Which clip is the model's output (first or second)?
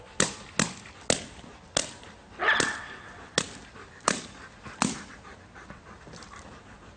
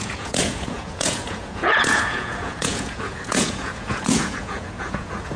second